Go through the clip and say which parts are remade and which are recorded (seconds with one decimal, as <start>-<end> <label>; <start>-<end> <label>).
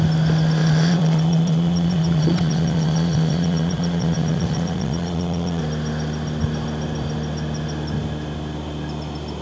0.0-0.6 recorded; 0.6-5.6 remade; 5.6-9.4 recorded